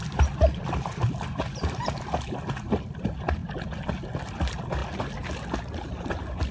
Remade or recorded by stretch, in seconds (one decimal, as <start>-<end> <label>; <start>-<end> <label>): 0.0-6.5 recorded